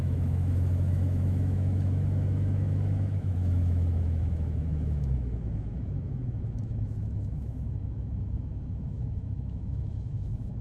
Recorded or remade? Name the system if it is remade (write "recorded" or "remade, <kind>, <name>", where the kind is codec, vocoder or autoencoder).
remade, autoencoder, DAC-VAE